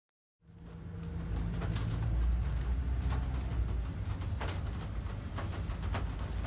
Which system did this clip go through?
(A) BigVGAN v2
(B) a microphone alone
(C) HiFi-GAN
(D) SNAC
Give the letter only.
B